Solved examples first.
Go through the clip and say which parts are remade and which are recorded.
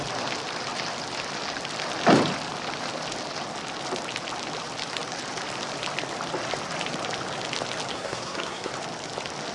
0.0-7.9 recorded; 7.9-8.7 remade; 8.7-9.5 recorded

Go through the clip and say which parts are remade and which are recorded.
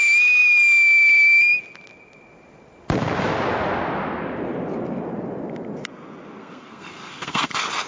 0.0-6.4 recorded; 6.4-7.5 remade; 7.5-7.9 recorded